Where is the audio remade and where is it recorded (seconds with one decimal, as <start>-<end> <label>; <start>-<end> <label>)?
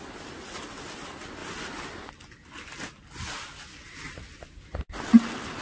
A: 0.0-5.6 recorded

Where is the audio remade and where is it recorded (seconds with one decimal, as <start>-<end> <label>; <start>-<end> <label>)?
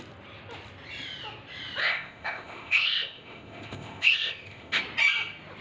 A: 0.0-1.8 recorded; 1.8-4.8 remade; 4.8-5.6 recorded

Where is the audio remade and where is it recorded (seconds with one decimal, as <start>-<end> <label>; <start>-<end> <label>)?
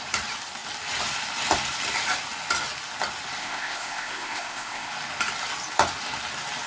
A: 0.0-3.4 recorded; 3.4-4.9 remade; 4.9-6.7 recorded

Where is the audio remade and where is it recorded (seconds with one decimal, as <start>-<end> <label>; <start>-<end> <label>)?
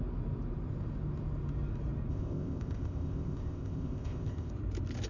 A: 0.0-2.1 recorded; 2.1-4.5 remade; 4.5-5.1 recorded